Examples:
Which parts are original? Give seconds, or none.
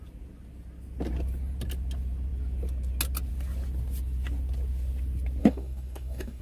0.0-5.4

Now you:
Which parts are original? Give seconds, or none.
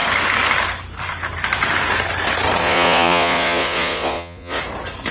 0.0-2.6; 4.6-5.1